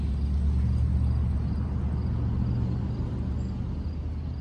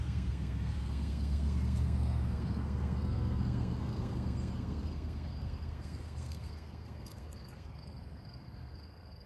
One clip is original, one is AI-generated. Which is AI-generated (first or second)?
second